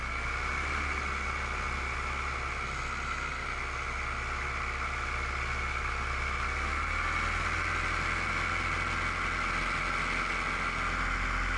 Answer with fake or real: real